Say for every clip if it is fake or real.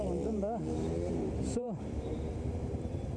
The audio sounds fake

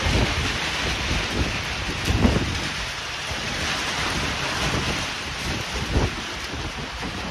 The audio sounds real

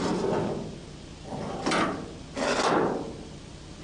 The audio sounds real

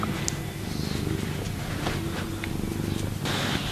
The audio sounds real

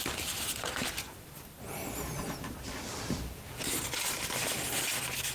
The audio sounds real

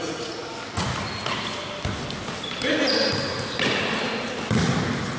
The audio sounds real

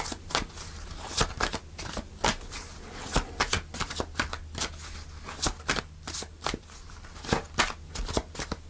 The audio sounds real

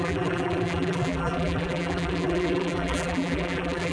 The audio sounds fake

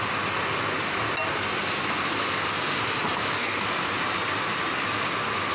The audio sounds real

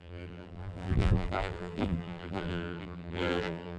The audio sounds fake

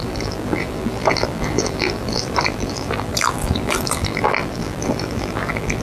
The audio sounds fake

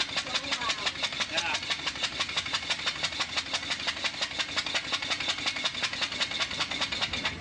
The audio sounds real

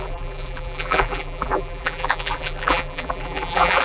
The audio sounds fake